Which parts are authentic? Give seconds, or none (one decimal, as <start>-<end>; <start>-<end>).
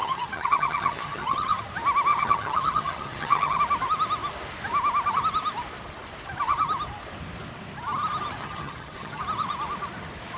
1.6-2.1; 3.6-8.4; 9.2-10.4